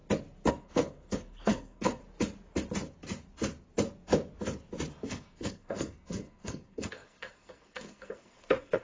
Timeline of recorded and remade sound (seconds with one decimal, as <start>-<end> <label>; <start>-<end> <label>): 0.0-0.5 recorded; 0.5-2.0 remade; 2.0-5.0 recorded; 5.0-8.8 remade